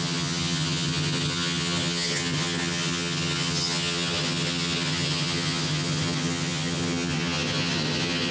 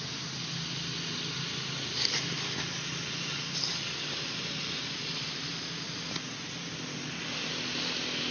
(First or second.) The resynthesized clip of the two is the first